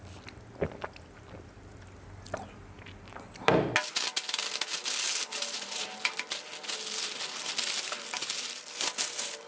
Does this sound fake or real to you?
real